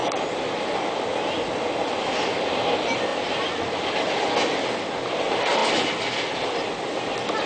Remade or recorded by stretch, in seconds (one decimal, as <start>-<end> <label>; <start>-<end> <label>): 0.0-3.1 recorded; 3.1-3.8 remade; 3.8-7.5 recorded